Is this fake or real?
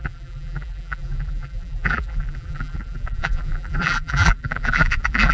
fake